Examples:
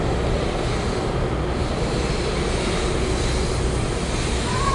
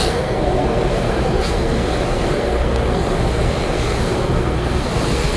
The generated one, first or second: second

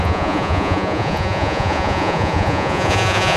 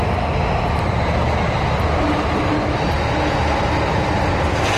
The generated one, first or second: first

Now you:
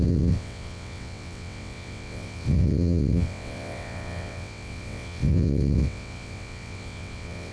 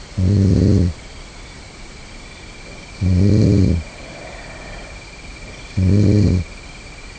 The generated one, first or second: first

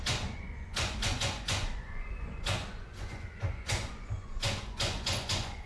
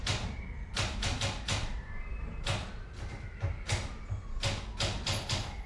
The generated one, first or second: first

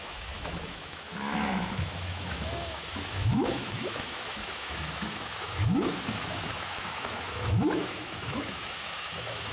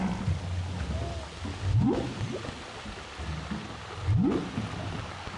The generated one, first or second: first